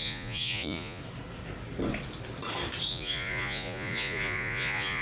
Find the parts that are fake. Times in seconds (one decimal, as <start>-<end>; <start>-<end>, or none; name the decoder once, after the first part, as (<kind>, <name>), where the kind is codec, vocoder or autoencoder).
0.0-1.0 (vocoder, Vocos); 2.9-5.0

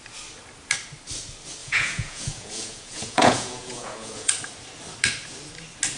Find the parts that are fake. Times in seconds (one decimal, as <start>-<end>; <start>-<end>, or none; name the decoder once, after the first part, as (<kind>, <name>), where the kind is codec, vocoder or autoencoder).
1.6-4.3 (vocoder, Vocos)